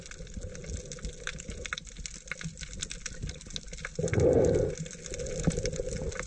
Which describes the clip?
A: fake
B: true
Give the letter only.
B